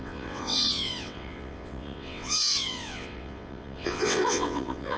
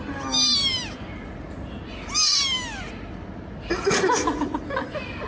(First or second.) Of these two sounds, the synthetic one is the first